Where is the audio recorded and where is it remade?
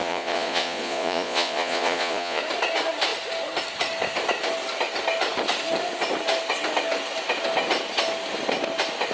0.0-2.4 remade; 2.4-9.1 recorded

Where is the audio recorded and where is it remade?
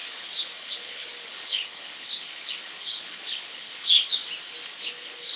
0.0-4.2 remade; 4.2-4.8 recorded; 4.8-5.4 remade